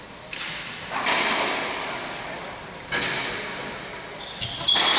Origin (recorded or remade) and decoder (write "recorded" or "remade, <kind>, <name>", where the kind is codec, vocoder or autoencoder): recorded